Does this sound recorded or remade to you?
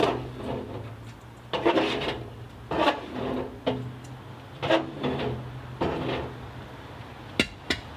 recorded